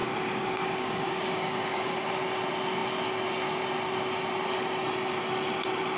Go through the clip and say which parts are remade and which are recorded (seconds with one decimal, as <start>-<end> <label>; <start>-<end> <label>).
0.0-2.1 remade; 2.1-6.0 recorded